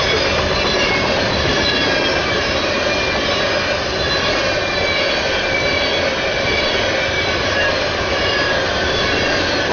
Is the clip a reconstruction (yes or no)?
no